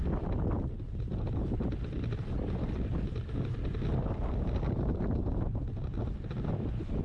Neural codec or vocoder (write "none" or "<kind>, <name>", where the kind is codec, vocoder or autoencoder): none